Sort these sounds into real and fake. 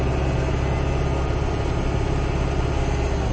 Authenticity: real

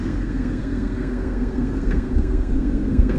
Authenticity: fake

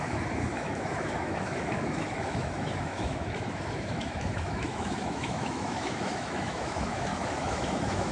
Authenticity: fake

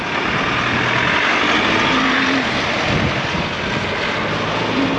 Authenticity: real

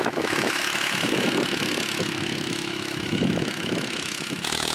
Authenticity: fake